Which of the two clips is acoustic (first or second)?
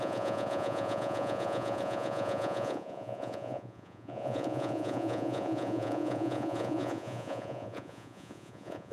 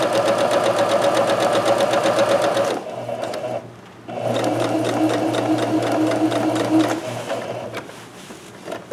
second